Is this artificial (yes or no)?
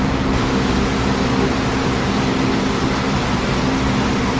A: no